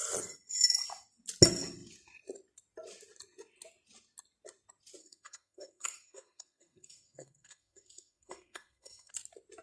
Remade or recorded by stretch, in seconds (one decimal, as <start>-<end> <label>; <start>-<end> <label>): 0.0-5.0 recorded; 5.0-9.1 remade; 9.1-9.6 recorded